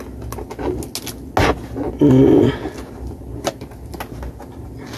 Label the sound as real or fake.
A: real